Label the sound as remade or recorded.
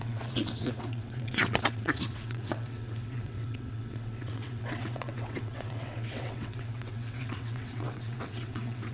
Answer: remade